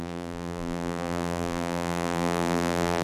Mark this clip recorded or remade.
remade